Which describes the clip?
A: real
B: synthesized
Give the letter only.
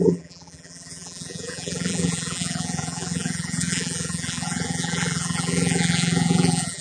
B